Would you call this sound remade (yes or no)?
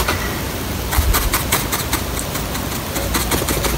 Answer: no